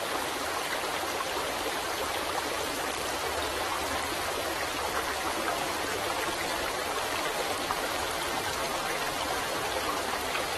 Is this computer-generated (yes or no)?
yes